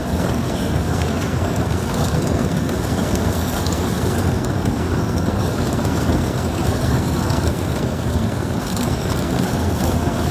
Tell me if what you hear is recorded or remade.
remade